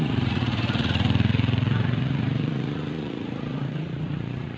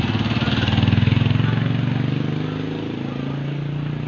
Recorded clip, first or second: second